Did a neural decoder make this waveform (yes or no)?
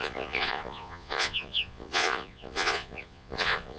yes